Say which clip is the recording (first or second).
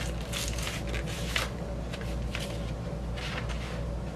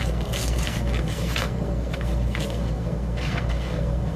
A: first